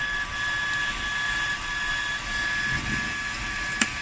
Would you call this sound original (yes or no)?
yes